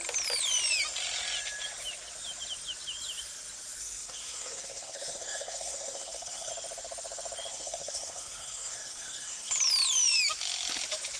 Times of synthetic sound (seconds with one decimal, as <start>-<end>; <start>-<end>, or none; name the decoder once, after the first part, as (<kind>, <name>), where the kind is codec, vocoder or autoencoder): 3.8-6.5 (codec, SNAC); 7.5-9.5